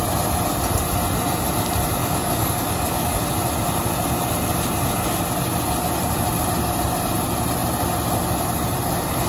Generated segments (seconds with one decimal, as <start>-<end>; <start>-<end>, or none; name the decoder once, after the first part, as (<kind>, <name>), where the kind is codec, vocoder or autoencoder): 2.0-3.2 (codec, DAC)